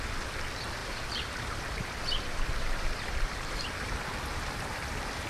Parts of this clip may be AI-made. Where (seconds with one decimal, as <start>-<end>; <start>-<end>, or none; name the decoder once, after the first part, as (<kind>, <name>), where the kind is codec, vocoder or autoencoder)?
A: 0.8-4.0 (vocoder, BigVGAN v2)